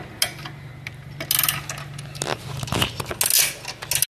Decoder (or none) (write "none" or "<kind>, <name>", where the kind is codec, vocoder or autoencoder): none